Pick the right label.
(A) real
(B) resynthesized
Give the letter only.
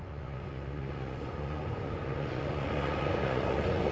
B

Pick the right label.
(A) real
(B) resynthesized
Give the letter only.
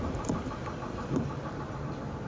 A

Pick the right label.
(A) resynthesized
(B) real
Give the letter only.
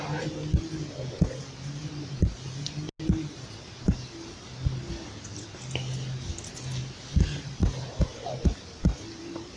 B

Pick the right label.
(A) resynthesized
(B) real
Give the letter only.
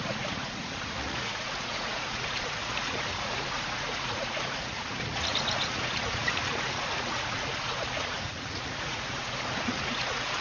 A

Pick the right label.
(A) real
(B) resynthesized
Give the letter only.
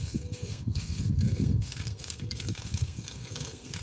B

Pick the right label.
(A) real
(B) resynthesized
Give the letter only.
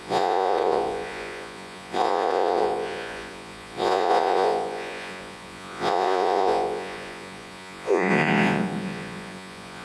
B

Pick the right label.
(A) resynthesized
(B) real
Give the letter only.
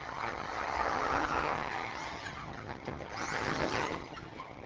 A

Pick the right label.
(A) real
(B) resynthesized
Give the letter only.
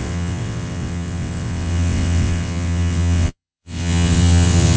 B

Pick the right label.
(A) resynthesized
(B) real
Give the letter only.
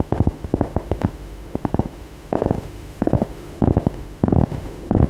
A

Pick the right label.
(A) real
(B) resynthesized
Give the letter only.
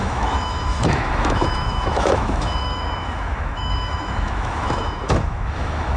B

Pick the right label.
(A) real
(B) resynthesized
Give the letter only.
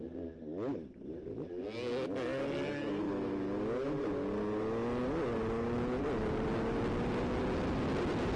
A